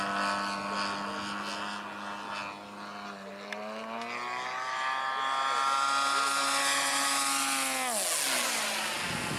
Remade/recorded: recorded